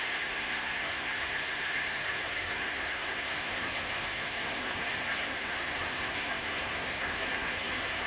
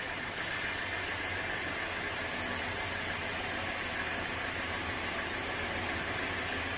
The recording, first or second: second